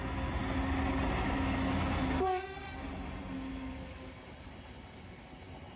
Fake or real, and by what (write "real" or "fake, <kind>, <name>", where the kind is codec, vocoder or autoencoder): real